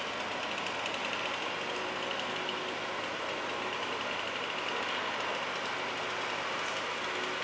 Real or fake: real